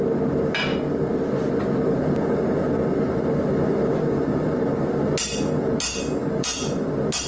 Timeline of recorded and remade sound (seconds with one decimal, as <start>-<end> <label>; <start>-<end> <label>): 0.0-6.2 recorded; 6.2-7.3 remade

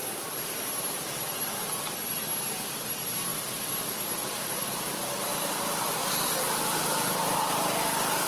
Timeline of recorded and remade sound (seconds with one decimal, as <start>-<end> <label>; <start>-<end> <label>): 0.0-3.3 recorded; 3.3-4.7 remade; 4.7-5.3 recorded; 5.3-6.1 remade; 6.1-8.3 recorded

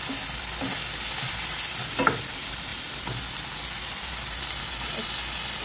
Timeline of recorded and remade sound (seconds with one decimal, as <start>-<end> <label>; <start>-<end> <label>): 0.0-5.6 recorded